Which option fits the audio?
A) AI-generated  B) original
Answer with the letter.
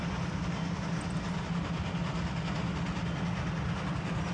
B